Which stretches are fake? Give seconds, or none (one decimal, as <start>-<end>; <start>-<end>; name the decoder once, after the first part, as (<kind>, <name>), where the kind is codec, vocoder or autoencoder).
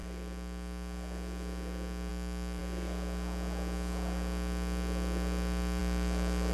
2.1-2.6 (autoencoder, DAC-VAE); 5.8-6.5